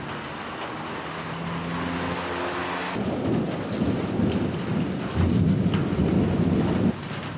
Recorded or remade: recorded